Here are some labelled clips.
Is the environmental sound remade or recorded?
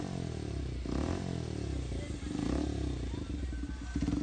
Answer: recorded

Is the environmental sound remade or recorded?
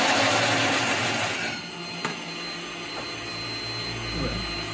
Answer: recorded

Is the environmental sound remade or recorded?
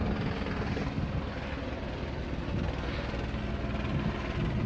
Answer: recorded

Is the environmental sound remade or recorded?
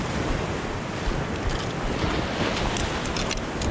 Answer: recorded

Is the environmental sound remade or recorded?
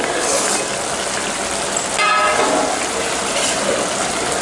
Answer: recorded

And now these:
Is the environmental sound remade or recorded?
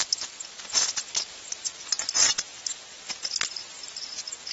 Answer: recorded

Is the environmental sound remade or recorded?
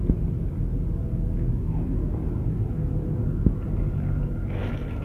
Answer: recorded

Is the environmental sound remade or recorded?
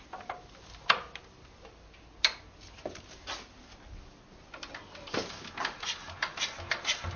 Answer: recorded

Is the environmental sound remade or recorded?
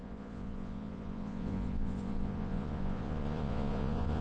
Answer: remade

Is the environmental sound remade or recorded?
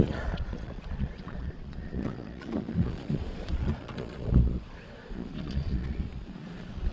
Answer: remade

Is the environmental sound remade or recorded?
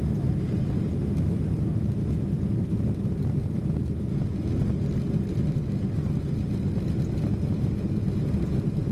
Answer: recorded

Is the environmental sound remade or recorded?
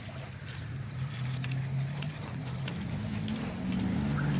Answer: recorded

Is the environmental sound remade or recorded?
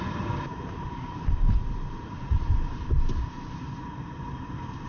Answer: remade